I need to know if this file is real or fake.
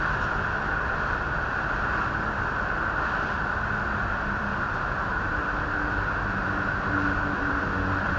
fake